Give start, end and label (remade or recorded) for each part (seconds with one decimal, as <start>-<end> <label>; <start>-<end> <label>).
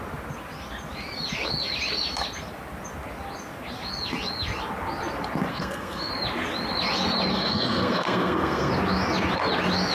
0.0-5.5 recorded; 5.5-6.1 remade; 6.1-7.3 recorded; 7.3-8.7 remade; 8.7-9.9 recorded